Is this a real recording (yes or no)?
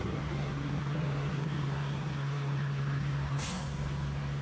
no